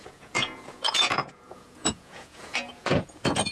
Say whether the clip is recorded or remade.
remade